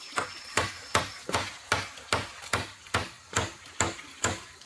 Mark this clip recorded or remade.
recorded